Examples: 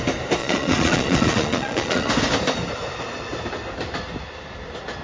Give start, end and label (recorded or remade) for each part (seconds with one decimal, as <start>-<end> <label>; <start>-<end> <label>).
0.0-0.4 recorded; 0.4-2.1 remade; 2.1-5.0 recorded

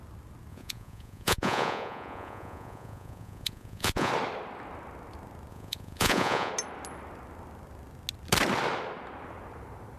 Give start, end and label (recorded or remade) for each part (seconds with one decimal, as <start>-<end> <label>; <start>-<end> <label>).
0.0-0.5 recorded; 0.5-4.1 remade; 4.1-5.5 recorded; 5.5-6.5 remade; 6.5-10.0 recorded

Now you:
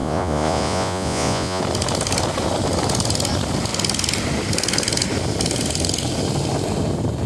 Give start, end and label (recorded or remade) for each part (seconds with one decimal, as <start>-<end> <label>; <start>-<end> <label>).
0.0-1.6 remade; 1.6-7.3 recorded